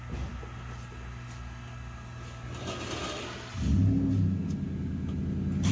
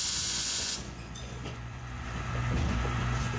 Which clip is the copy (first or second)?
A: second